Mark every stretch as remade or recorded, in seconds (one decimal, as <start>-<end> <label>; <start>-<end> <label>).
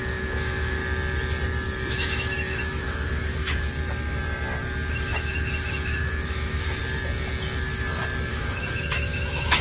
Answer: 0.0-0.8 remade; 0.8-1.9 recorded; 1.9-3.7 remade; 3.7-4.9 recorded; 4.9-6.8 remade; 6.8-8.3 recorded; 8.3-9.6 remade